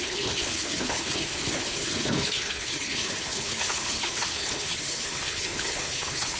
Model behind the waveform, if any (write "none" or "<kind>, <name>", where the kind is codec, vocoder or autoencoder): codec, HILCodec